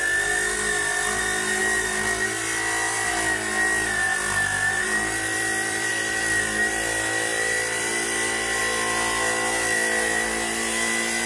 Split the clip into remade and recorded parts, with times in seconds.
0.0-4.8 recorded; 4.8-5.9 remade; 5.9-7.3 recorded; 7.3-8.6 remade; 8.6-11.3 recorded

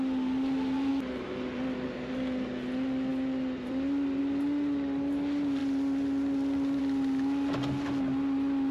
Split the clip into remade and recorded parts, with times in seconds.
0.0-0.9 recorded; 0.9-2.1 remade; 2.1-3.1 recorded; 3.1-4.2 remade; 4.2-5.6 recorded; 5.6-6.8 remade; 6.8-8.7 recorded

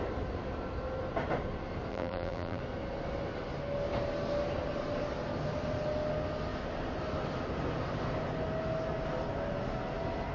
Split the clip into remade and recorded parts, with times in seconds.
0.0-1.9 recorded; 1.9-2.6 remade; 2.6-10.3 recorded

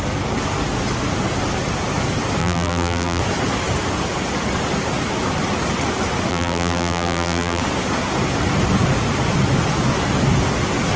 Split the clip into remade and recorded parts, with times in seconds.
0.0-2.4 recorded; 2.4-3.2 remade; 3.2-6.3 recorded; 6.3-7.6 remade; 7.6-11.0 recorded

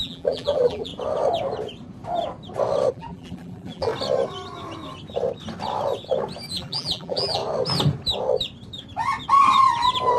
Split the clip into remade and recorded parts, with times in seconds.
0.0-0.9 remade; 0.9-2.9 recorded; 2.9-3.9 remade; 3.9-6.5 recorded; 6.5-7.4 remade; 7.4-10.2 recorded